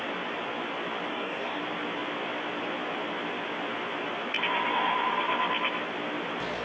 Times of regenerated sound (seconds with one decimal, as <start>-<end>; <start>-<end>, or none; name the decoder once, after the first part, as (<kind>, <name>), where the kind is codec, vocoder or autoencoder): 1.1-1.6 (codec, DAC)